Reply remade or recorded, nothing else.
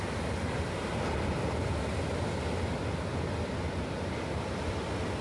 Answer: recorded